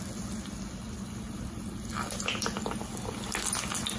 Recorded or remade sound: recorded